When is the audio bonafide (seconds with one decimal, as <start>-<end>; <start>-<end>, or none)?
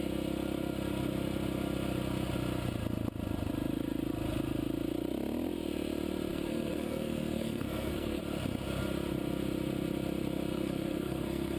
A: 0.0-6.3; 8.2-10.5